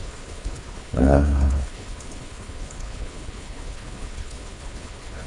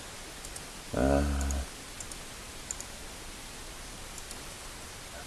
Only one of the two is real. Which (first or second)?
second